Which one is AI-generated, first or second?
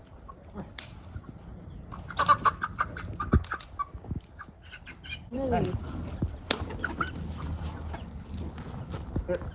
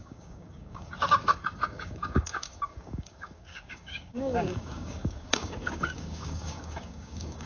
second